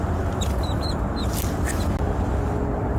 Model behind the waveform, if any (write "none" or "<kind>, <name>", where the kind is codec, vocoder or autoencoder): none